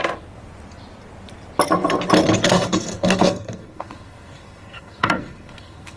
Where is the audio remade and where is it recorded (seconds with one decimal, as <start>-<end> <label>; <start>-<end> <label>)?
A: 0.0-2.4 recorded; 2.4-6.0 remade